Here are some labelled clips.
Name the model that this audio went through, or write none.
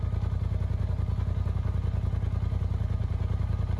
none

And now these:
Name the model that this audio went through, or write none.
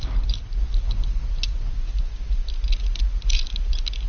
none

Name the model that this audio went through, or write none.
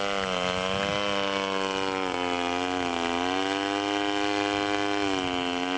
none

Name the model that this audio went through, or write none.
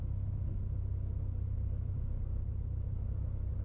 none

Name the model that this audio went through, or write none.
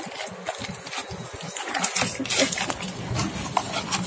none